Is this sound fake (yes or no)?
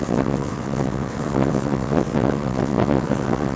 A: yes